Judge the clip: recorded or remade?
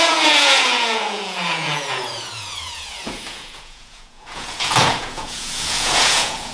remade